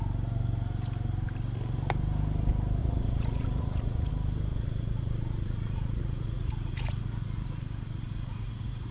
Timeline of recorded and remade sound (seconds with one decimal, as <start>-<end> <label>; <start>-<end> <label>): 0.0-2.8 recorded; 2.8-4.1 remade; 4.1-4.5 recorded; 4.5-8.9 remade